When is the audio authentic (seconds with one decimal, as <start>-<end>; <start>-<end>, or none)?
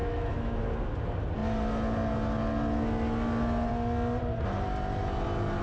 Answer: 0.6-5.6